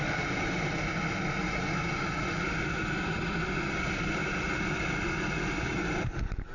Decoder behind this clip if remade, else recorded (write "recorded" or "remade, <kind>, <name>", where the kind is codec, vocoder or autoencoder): recorded